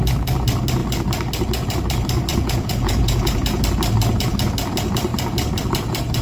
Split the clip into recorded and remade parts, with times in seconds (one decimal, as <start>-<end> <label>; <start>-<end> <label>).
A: 0.0-2.3 recorded; 2.3-3.6 remade; 3.6-6.2 recorded